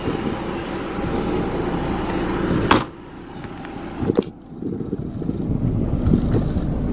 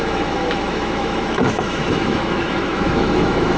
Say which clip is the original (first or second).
first